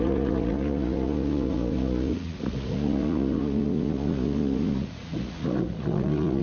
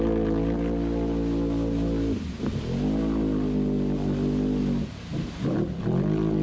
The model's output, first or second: first